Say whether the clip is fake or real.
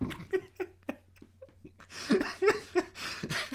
real